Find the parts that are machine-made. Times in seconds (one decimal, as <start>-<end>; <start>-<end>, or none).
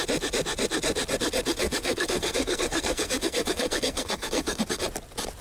1.6-4.6